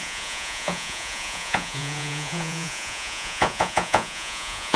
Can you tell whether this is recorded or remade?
remade